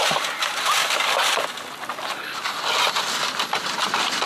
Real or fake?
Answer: real